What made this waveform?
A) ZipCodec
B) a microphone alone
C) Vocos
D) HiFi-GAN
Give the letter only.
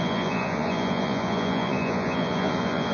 C